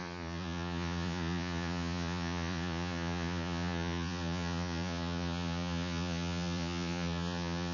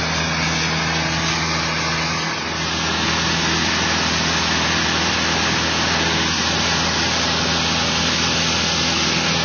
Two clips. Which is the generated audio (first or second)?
first